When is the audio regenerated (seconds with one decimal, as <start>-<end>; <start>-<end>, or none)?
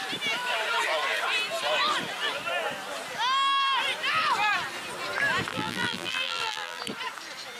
5.5-6.8